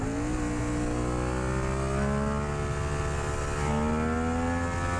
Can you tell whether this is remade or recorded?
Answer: recorded